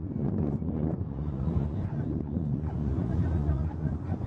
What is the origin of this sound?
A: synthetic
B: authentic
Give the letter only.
A